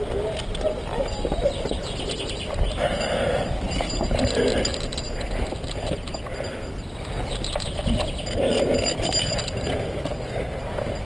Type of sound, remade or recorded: recorded